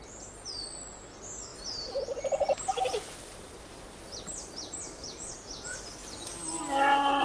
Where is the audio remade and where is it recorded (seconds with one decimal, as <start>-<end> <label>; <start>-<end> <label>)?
0.0-1.5 recorded; 1.5-5.4 remade; 5.4-7.2 recorded